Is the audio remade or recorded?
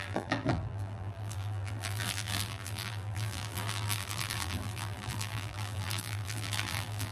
remade